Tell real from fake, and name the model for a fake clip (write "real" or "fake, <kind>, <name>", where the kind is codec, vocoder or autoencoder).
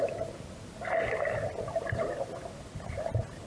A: real